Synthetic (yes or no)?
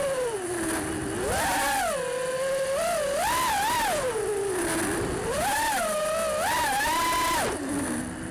no